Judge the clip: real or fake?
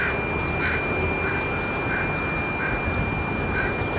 real